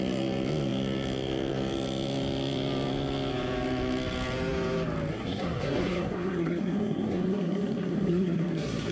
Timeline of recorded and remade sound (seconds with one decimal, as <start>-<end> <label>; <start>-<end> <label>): 0.0-5.1 recorded; 5.1-8.9 remade